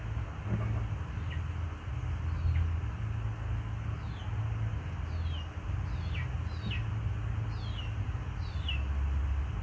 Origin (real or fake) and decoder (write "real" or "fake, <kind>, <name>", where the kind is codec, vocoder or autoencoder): real